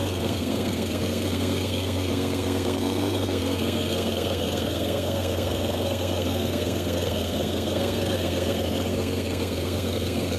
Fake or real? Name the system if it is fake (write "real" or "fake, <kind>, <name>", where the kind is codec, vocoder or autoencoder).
fake, codec, SNAC